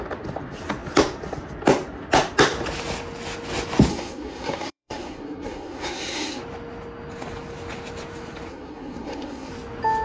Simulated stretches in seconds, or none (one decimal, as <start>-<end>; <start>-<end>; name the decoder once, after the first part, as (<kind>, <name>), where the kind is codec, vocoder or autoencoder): 3.9-6.4 (codec, SNAC); 8.5-9.5